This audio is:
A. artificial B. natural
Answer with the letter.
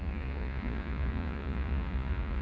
A